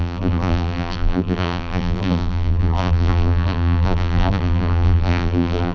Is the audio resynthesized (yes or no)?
yes